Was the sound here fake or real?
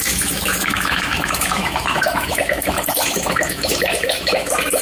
fake